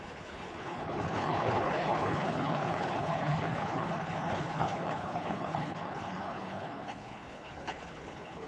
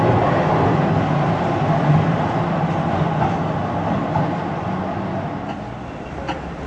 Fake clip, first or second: first